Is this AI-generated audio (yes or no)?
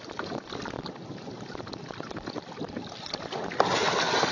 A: no